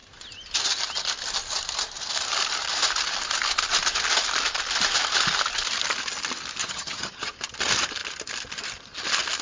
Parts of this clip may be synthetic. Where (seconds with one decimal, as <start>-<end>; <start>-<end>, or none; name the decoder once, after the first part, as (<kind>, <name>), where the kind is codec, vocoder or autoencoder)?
6.6-7.3 (vocoder, HiFi-GAN)